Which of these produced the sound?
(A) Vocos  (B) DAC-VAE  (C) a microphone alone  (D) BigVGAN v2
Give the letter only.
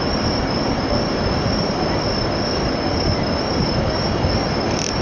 C